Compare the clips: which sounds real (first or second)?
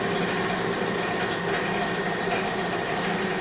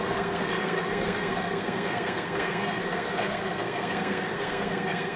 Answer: first